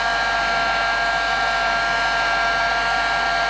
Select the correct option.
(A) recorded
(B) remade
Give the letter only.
A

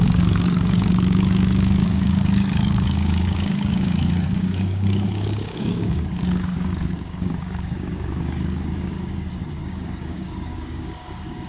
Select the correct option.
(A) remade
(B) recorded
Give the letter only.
A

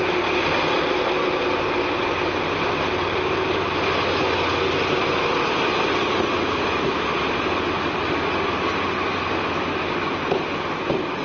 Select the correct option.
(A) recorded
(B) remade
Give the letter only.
A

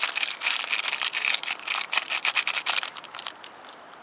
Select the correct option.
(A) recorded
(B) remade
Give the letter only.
B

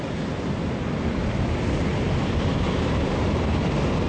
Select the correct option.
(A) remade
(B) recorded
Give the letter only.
B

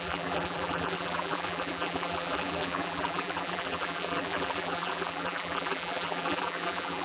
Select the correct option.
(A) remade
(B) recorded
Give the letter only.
A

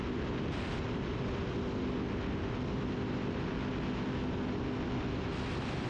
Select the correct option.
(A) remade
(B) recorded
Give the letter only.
B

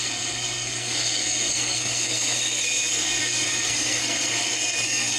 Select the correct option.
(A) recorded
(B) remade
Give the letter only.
B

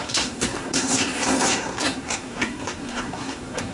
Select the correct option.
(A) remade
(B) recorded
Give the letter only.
A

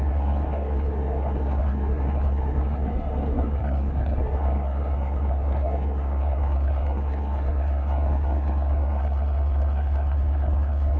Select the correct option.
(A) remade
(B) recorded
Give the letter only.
A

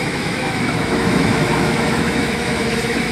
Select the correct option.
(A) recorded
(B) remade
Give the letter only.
B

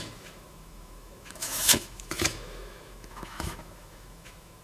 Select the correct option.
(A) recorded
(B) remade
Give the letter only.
B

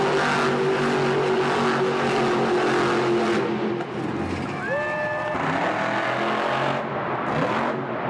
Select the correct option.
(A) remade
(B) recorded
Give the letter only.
B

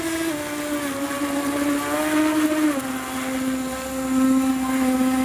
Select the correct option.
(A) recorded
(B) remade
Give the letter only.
A